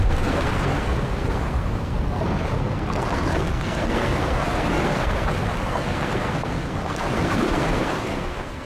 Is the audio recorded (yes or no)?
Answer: no